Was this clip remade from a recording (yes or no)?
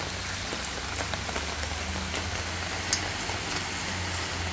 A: no